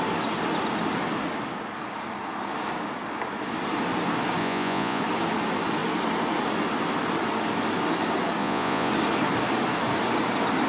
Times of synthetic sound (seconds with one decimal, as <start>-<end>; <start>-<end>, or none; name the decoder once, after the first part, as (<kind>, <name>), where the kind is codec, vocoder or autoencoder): 4.4-5.0 (vocoder, Vocos); 8.4-8.9